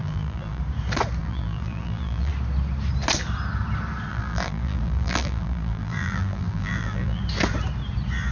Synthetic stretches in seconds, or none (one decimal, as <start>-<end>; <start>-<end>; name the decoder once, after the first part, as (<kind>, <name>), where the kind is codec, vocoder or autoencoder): 0.0-0.6 (vocoder, BigVGAN v2); 1.2-2.3; 4.1-7.2